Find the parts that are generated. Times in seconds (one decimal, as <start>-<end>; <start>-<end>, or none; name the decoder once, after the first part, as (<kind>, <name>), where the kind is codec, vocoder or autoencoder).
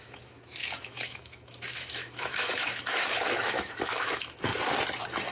0.0-4.5 (autoencoder, DAC-VAE)